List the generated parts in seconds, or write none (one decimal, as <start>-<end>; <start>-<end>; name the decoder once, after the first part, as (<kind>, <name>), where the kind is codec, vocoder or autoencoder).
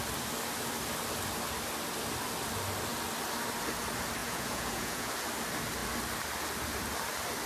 4.2-5.1 (vocoder, Vocos)